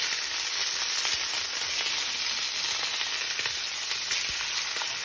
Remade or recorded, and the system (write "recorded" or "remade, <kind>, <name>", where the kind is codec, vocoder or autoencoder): recorded